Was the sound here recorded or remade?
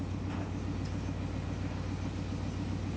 recorded